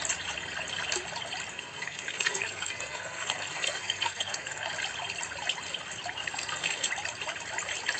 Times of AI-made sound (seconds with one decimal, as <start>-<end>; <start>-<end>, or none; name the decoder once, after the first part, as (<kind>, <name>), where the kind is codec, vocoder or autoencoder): 1.5-4.7 (codec, SNAC); 6.2-6.9